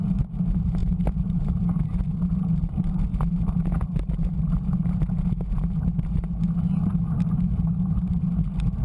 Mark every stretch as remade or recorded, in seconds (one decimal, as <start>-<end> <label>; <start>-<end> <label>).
0.0-0.8 recorded; 0.8-1.8 remade; 1.8-8.8 recorded